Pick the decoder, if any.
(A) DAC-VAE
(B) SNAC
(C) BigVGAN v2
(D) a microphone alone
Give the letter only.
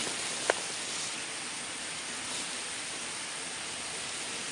D